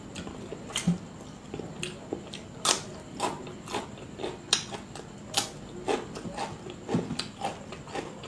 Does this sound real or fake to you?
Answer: real